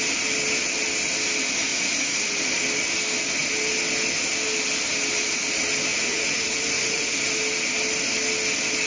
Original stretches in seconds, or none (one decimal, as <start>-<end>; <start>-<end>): 0.0-1.7; 2.4-5.9; 7.2-8.9